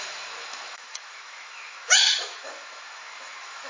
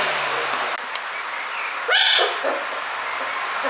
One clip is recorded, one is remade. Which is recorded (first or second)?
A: second